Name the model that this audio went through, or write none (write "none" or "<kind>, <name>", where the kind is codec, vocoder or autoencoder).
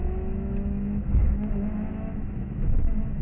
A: autoencoder, DAC-VAE